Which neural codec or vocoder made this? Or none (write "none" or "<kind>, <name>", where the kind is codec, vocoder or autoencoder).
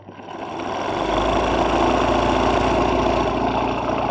none